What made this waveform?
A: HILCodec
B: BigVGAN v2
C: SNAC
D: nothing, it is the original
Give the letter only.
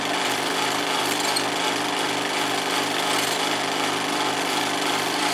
B